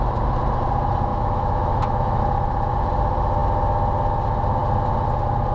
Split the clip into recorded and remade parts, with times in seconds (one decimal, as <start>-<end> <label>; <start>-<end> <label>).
0.0-1.1 recorded; 1.1-2.2 remade; 2.2-5.5 recorded